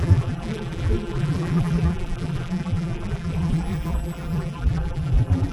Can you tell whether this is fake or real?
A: fake